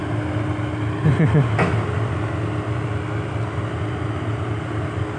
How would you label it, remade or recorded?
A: recorded